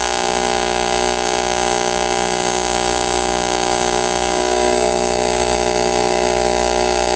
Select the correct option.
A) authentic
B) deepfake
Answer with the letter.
B